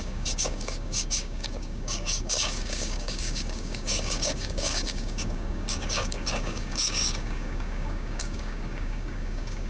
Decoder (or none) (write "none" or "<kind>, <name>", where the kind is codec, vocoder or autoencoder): codec, DAC